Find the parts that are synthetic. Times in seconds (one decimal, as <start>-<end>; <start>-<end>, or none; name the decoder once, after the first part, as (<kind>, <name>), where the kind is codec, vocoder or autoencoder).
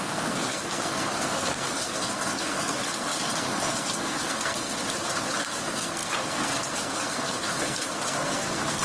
0.0-4.8 (codec, SNAC); 5.4-8.8